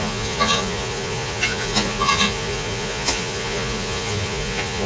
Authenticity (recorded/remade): remade